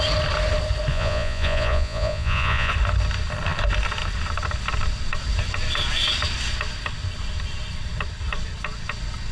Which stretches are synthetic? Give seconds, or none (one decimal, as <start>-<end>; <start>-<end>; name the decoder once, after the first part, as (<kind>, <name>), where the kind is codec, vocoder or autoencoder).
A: 0.9-2.7 (vocoder, Vocos)